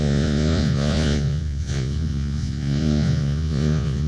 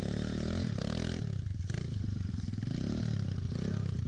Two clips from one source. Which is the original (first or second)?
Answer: second